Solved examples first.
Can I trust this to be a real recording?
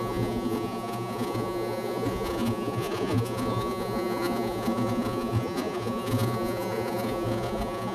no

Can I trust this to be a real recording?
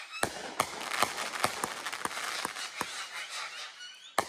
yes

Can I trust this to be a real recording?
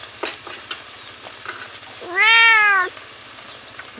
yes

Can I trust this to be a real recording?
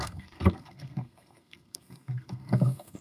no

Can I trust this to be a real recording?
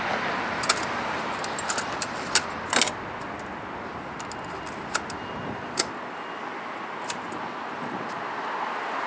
yes